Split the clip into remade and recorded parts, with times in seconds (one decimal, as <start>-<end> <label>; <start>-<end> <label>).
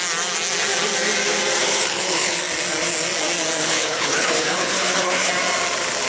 0.0-1.6 recorded; 1.6-2.4 remade; 2.4-3.6 recorded; 3.6-5.3 remade; 5.3-6.1 recorded